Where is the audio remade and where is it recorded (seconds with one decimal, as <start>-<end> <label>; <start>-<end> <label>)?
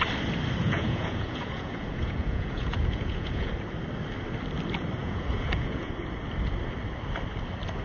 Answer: 0.0-0.6 recorded; 0.6-3.5 remade; 3.5-5.0 recorded; 5.0-5.9 remade; 5.9-7.8 recorded